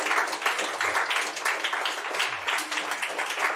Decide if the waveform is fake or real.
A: real